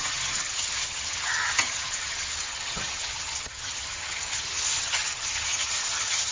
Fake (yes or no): yes